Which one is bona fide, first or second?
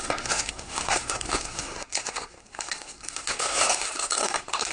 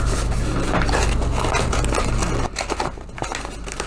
second